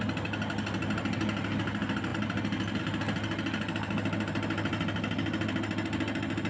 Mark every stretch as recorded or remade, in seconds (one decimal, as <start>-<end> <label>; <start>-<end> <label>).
0.0-6.5 recorded